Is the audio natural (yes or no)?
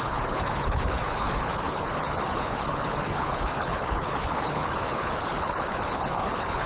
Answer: no